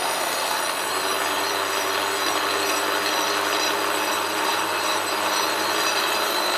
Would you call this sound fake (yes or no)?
no